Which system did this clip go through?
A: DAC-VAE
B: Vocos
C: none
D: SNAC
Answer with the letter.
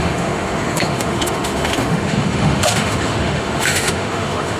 A